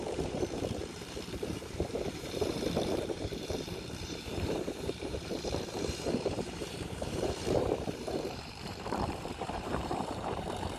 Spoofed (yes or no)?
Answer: yes